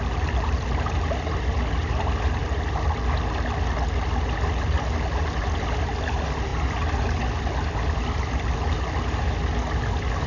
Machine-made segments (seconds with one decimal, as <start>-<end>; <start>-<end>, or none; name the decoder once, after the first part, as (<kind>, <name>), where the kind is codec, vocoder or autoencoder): none